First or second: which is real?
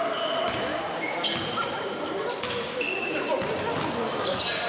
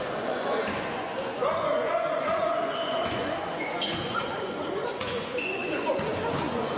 first